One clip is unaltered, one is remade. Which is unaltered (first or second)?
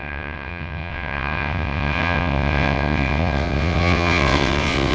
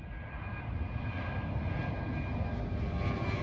second